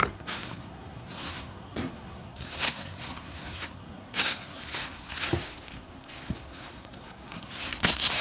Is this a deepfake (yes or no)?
yes